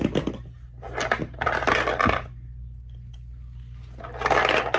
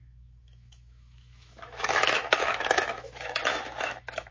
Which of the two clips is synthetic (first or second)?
second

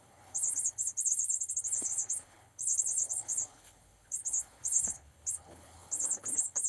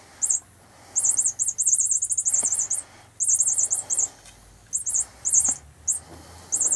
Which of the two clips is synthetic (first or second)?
first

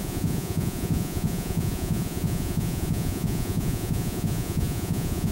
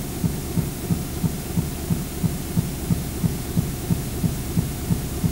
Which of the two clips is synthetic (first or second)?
first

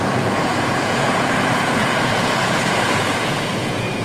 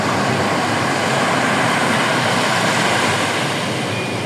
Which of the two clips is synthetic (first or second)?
first